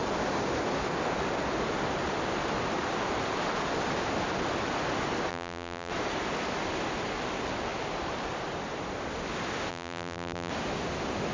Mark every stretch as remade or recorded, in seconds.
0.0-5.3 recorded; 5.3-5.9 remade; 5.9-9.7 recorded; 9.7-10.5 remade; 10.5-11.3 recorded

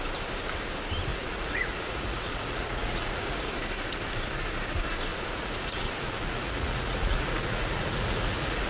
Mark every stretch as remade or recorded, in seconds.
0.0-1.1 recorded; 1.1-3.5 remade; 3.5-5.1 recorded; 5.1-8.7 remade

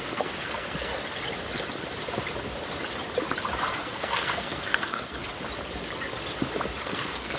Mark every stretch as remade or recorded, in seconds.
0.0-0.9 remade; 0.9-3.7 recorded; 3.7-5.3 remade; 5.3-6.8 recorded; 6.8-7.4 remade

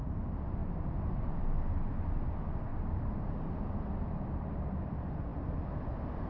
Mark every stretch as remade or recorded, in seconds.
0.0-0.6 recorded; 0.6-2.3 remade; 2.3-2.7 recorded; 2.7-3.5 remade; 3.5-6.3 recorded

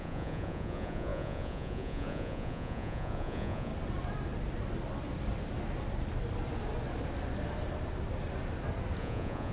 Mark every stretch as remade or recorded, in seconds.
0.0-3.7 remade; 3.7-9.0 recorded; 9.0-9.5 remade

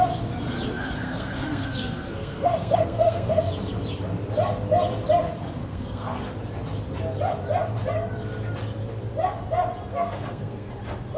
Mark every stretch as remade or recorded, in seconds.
0.0-0.7 recorded; 0.7-3.4 remade; 3.4-5.6 recorded; 5.6-6.2 remade; 6.2-9.9 recorded; 9.9-10.7 remade; 10.7-11.2 recorded